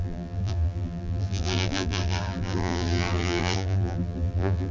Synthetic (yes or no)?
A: yes